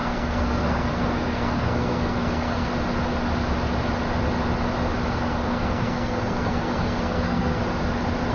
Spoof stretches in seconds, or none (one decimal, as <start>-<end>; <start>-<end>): 0.0-2.7; 5.1-7.6